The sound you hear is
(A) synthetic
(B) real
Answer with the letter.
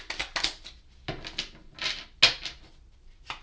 B